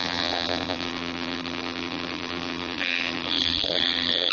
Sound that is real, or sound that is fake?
fake